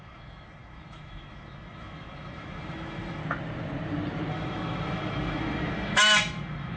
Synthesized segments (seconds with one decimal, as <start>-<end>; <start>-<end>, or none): 0.0-3.2; 4.3-6.8